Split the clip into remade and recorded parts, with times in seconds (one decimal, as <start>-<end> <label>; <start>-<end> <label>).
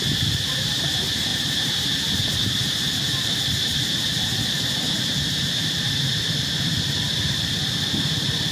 0.0-1.3 recorded; 1.3-6.3 remade; 6.3-8.5 recorded